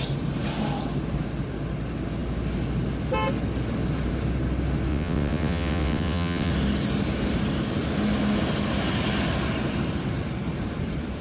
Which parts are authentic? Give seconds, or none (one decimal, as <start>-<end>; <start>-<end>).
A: 0.0-4.9; 6.5-11.2